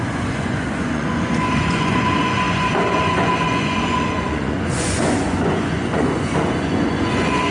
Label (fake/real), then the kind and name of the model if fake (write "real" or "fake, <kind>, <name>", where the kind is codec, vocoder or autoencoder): fake, vocoder, Vocos